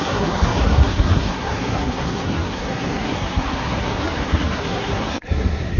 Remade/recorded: remade